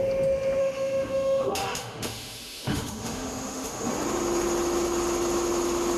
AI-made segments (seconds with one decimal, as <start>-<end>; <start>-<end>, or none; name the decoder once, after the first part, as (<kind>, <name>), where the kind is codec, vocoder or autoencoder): 0.6-3.9 (autoencoder, DAC-VAE)